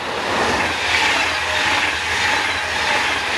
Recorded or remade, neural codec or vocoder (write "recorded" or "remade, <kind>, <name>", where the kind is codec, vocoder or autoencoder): recorded